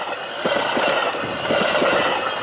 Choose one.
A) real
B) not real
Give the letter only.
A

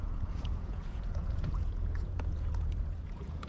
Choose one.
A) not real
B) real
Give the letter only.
A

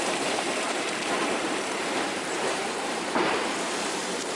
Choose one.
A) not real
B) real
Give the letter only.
A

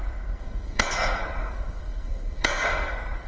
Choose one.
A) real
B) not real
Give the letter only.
B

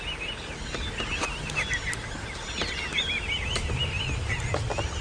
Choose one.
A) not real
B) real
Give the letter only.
B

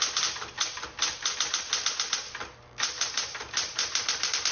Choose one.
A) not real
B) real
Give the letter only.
B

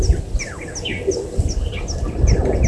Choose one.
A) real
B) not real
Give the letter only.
A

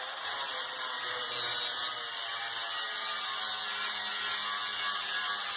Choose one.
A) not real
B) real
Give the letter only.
B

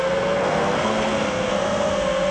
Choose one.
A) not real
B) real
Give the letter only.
A